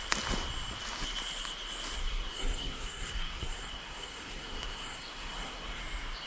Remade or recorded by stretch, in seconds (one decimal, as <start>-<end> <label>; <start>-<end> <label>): 0.0-2.0 recorded; 2.0-5.8 remade; 5.8-6.3 recorded